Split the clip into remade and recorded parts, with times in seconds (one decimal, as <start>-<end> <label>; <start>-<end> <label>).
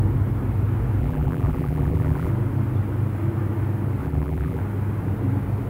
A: 0.0-1.0 recorded; 1.0-2.3 remade; 2.3-4.0 recorded; 4.0-4.6 remade; 4.6-5.7 recorded